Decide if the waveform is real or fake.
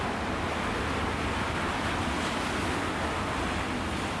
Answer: real